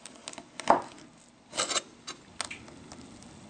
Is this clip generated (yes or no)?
no